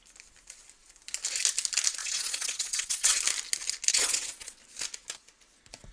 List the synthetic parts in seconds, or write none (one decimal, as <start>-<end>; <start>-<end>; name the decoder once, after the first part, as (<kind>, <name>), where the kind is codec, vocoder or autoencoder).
2.0-3.2 (vocoder, WaveNeXt); 3.9-4.6